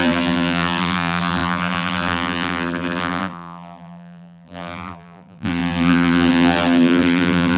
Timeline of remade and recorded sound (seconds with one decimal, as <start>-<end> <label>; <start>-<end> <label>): 0.0-7.6 remade